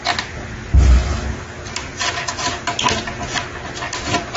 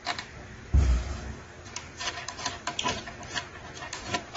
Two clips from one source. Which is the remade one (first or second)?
second